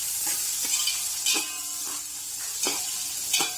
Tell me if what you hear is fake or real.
real